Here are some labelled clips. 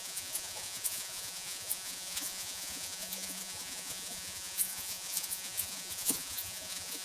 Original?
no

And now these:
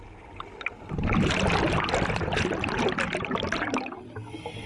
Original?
yes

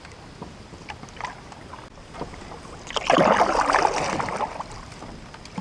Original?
yes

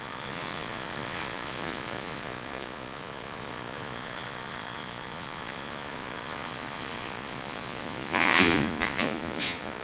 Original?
no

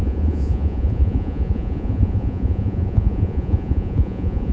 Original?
no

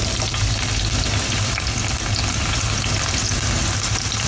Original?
yes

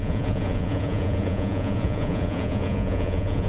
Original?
no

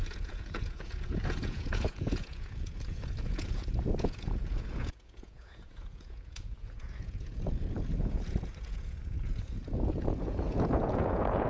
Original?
no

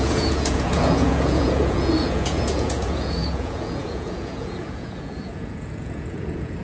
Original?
no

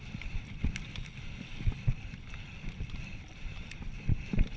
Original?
yes